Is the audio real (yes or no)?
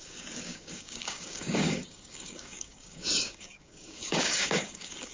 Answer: no